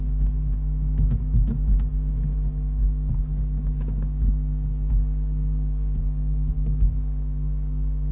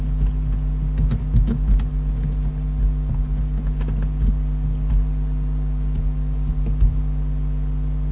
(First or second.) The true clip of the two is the second